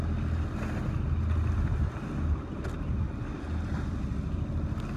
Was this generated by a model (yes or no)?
no